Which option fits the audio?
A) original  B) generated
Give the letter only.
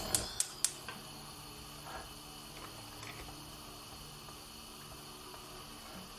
A